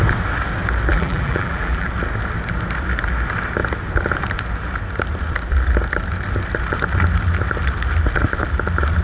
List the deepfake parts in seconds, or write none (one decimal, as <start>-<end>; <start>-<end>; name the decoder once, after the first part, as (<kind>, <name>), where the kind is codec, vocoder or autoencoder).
0.9-1.9 (vocoder, BigVGAN v2)